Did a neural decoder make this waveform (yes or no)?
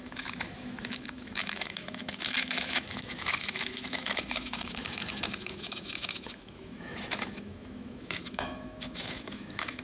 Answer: yes